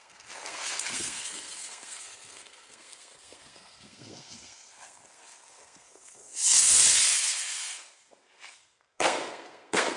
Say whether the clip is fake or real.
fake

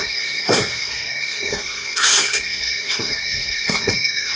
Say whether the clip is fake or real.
fake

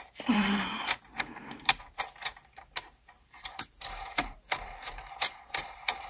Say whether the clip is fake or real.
fake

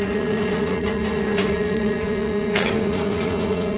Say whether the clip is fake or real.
fake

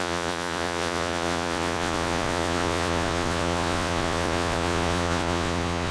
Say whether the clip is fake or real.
fake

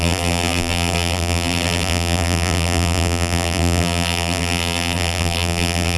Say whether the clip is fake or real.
fake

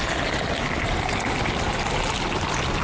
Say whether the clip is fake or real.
real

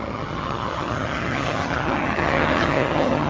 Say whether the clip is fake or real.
fake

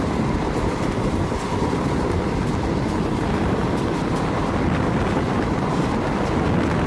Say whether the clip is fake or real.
real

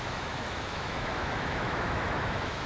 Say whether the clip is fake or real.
fake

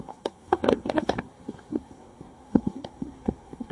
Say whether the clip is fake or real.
fake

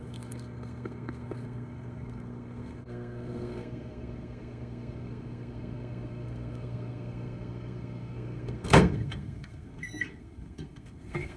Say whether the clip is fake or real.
fake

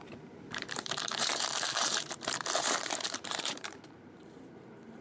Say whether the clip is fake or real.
fake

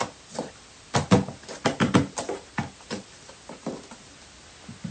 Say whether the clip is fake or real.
real